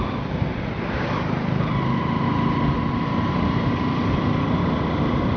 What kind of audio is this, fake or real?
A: real